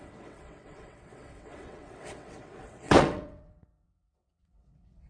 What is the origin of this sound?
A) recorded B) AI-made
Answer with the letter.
B